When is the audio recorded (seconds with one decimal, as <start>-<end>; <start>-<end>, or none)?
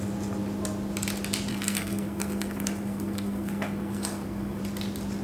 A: 0.0-1.5; 4.6-5.2